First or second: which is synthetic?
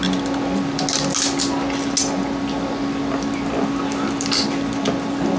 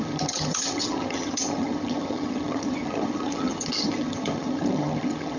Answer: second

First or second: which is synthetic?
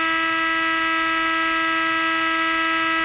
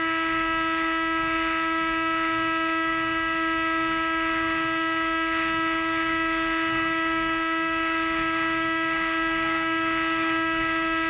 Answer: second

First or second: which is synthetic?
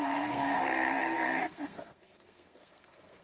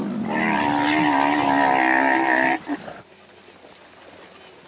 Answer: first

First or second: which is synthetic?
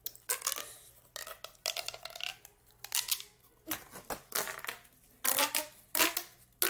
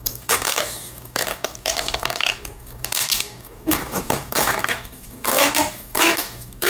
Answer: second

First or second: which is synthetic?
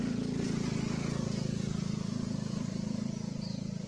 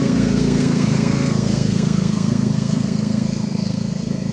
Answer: second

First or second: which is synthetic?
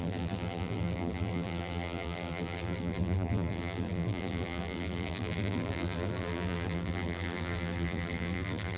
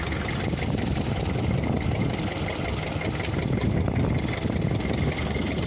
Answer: first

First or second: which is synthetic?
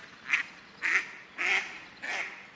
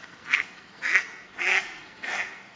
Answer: second